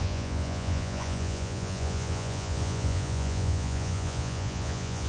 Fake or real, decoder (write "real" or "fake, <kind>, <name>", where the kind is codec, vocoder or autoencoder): fake, vocoder, Vocos